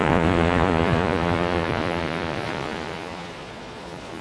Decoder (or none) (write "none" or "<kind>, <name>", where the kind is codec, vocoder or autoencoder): vocoder, Vocos